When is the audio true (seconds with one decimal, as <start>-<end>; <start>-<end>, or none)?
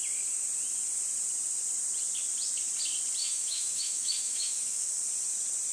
0.0-3.2; 4.9-5.7